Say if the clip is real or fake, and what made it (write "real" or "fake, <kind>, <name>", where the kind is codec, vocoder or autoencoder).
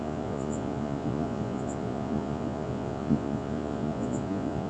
fake, vocoder, Vocos